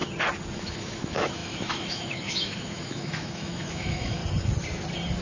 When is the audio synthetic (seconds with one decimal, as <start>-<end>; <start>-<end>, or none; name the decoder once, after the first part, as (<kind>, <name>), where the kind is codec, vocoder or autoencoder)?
0.6-4.2 (autoencoder, DAC-VAE)